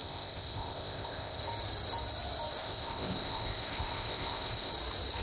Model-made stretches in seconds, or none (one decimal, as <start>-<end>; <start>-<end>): 0.0-1.4; 2.6-4.7